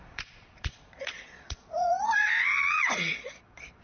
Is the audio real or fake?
fake